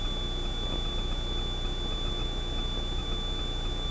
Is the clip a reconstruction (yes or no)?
no